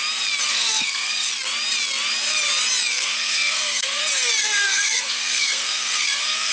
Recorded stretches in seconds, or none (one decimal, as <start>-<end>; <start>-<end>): 0.0-0.5; 1.3-2.9; 4.0-4.4